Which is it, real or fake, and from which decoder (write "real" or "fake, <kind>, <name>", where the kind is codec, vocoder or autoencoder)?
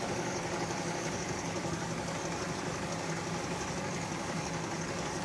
fake, codec, DAC